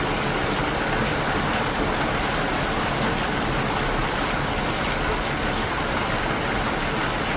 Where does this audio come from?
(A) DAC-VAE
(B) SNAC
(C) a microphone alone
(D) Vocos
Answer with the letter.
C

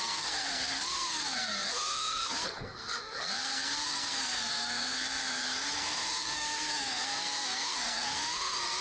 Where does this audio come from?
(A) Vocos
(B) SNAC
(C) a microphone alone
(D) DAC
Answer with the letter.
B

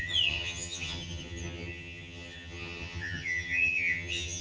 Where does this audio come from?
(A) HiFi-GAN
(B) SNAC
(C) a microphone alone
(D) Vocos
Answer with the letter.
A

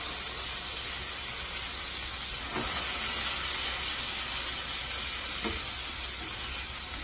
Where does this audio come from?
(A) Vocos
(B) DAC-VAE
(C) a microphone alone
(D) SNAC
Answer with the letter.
C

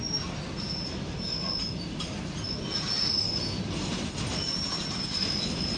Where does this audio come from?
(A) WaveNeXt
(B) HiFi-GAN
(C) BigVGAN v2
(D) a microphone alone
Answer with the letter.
D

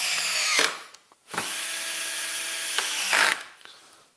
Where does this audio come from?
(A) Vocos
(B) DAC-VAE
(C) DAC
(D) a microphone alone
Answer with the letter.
B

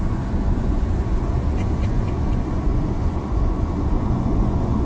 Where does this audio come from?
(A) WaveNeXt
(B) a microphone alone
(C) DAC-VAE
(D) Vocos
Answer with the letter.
D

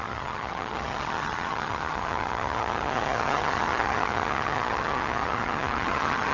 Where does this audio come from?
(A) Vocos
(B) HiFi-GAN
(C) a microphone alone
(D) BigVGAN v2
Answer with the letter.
B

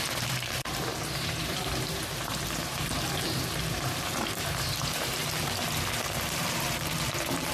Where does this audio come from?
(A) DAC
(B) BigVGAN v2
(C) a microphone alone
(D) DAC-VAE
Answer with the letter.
B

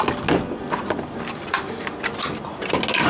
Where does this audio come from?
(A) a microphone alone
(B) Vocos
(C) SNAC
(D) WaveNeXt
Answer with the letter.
A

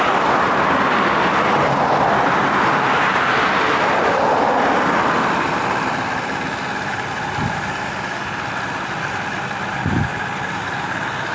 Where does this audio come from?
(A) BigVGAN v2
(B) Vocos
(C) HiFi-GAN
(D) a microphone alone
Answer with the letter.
D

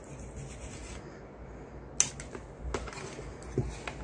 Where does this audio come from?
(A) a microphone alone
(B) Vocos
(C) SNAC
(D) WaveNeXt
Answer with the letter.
A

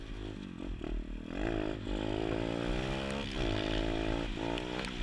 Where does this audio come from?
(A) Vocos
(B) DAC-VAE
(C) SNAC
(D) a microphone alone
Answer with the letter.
D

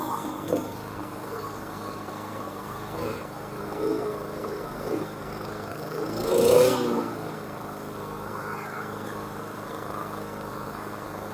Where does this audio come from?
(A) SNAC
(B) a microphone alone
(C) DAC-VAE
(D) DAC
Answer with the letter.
A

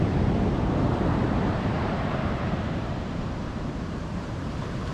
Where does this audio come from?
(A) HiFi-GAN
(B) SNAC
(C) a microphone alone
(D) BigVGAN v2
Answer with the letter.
D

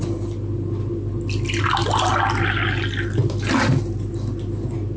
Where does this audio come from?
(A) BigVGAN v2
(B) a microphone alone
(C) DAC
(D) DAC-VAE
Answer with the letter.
B